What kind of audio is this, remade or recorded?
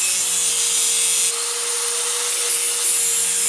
recorded